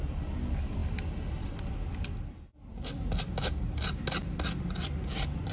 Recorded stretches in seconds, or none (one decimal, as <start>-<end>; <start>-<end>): 0.0-5.5